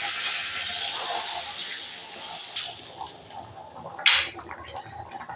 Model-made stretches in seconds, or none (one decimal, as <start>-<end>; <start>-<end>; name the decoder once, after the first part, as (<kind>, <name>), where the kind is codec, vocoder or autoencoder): none